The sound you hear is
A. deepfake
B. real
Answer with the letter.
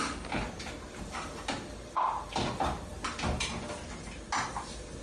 B